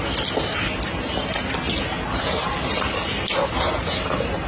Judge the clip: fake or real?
real